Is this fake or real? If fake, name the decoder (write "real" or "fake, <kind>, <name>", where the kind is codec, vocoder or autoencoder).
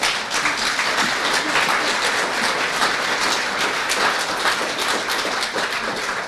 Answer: real